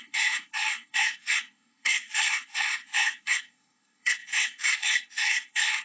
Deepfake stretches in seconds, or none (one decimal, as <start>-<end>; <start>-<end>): 0.0-5.8